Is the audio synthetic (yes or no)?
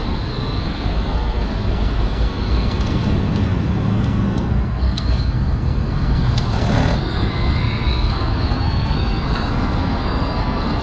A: yes